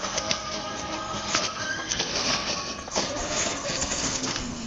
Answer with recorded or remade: remade